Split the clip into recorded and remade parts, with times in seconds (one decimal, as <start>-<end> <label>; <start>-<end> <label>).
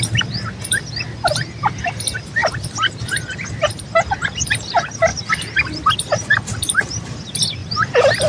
0.0-8.3 recorded